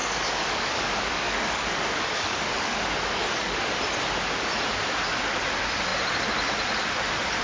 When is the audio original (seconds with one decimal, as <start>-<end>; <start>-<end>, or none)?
3.7-7.4